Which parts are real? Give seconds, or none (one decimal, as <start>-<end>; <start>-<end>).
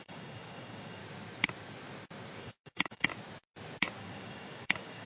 1.0-2.4; 3.1-4.0